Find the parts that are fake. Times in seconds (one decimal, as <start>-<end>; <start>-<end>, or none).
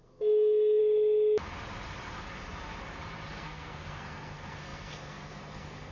0.0-0.8; 3.3-5.9